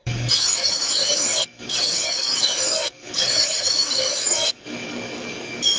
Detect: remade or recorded remade